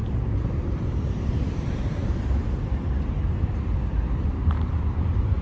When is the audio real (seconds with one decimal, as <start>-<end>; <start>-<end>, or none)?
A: 1.5-4.2

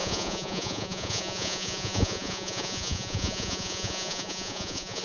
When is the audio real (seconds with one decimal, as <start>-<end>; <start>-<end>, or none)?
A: none

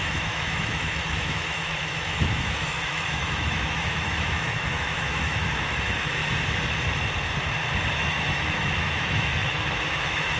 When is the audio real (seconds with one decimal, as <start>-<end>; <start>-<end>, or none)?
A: 6.2-7.9

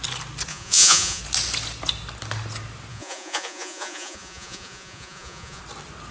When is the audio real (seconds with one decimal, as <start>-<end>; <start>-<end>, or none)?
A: 0.0-0.5; 1.2-2.9; 5.6-6.1